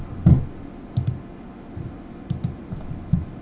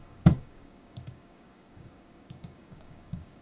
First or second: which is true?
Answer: first